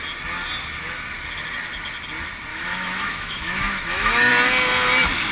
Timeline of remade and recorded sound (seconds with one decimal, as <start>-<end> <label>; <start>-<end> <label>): 0.0-2.5 recorded; 2.5-4.3 remade; 4.3-5.3 recorded